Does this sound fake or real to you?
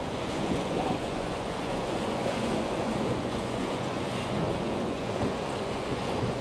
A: fake